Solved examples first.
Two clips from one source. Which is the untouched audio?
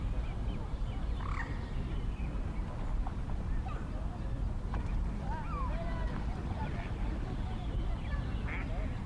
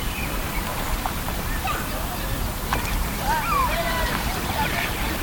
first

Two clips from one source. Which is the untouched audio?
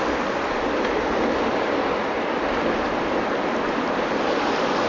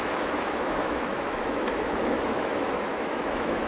first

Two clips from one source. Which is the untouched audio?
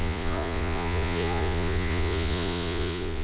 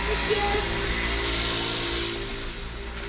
second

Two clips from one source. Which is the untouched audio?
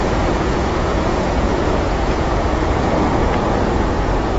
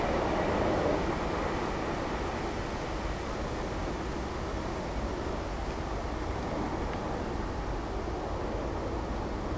second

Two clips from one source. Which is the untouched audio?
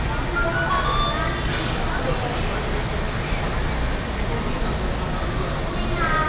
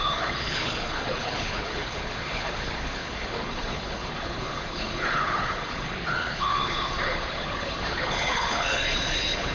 first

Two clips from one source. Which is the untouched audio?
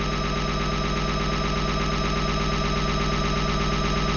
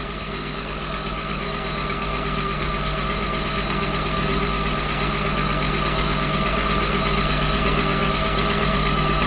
first